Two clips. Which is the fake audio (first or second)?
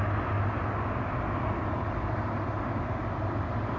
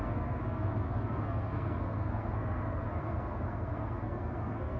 second